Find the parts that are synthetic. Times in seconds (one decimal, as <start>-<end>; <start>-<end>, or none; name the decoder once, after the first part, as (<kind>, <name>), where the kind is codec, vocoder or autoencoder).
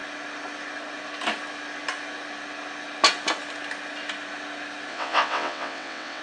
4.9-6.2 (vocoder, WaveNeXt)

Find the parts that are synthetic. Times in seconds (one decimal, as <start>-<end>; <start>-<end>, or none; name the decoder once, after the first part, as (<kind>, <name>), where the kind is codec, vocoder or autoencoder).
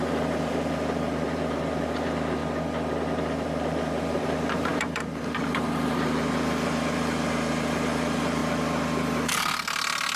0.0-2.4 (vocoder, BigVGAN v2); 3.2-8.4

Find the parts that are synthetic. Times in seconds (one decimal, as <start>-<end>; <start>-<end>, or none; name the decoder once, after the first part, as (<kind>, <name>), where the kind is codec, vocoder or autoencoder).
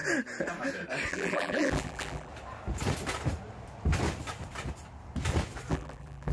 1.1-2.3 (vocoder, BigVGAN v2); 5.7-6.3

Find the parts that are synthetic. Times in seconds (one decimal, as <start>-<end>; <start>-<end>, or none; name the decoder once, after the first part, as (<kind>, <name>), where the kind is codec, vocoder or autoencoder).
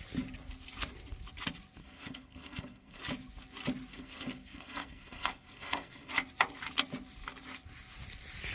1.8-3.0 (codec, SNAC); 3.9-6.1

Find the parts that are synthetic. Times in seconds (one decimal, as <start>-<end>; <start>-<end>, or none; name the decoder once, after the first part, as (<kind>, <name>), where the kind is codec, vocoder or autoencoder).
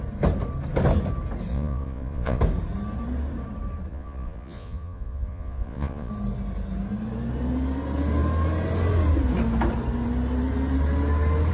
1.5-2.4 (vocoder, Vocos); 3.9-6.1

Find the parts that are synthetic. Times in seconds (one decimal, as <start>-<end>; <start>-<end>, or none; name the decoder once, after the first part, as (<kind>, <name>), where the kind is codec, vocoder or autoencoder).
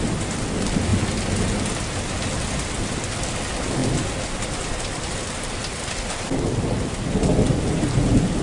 none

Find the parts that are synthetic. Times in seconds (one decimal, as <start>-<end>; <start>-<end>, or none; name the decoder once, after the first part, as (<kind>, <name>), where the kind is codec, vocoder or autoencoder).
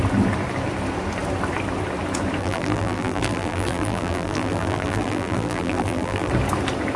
2.4-6.3 (vocoder, BigVGAN v2)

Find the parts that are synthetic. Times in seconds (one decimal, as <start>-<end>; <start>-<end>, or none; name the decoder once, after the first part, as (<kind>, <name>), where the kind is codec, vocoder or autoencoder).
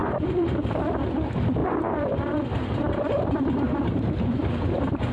0.0-1.1 (vocoder, BigVGAN v2); 1.6-5.1